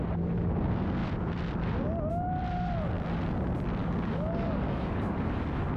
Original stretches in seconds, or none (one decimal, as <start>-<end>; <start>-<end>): 0.0-3.8; 5.3-5.8

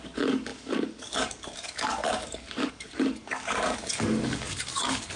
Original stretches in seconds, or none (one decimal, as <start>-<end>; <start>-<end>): none